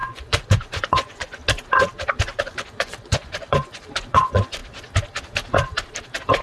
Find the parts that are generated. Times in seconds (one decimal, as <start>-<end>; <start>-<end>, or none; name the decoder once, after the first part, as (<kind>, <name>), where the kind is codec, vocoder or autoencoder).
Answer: 0.0-1.4 (vocoder, Vocos); 2.4-4.6